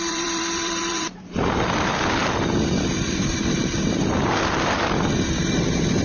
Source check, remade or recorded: remade